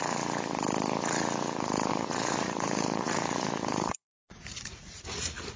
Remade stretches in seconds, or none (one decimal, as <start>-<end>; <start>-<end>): 1.9-5.6